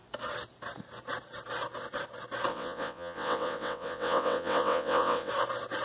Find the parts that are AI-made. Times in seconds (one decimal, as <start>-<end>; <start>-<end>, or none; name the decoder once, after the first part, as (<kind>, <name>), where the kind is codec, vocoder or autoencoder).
2.5-5.3 (vocoder, WaveNeXt)